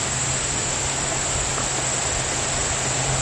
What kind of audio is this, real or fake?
real